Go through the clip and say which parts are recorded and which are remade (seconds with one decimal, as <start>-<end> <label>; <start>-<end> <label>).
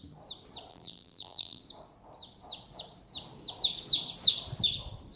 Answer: 0.0-0.7 recorded; 0.7-1.6 remade; 1.6-5.2 recorded